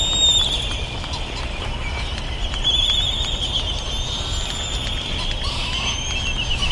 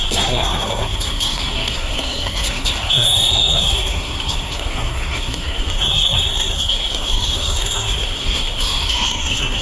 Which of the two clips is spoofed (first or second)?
second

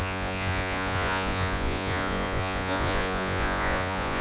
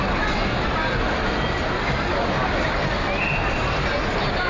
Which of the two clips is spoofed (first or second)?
first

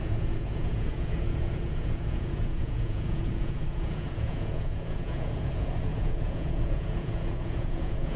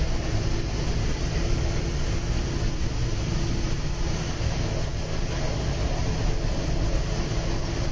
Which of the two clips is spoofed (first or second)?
first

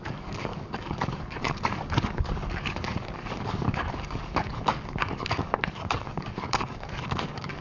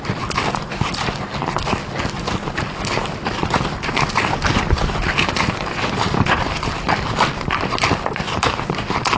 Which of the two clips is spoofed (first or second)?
first